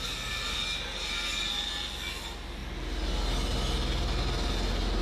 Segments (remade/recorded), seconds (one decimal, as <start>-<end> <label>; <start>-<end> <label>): 0.0-5.0 recorded